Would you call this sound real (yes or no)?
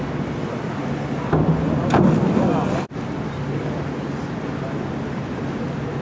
yes